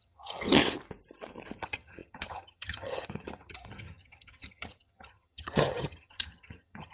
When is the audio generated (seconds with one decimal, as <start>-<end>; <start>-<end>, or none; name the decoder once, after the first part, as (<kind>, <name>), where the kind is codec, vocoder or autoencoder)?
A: 0.0-0.6 (vocoder, HiFi-GAN); 1.6-6.9